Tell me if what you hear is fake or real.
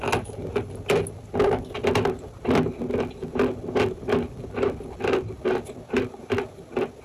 real